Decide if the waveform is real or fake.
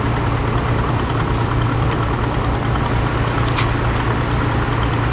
real